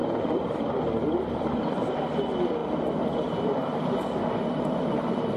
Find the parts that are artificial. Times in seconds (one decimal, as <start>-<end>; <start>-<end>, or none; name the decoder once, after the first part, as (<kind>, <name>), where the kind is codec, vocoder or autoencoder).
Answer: 1.3-2.6 (vocoder, BigVGAN v2); 4.6-5.4